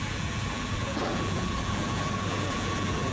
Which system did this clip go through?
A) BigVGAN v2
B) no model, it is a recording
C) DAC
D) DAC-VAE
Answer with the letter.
A